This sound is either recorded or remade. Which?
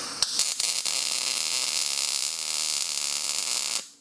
recorded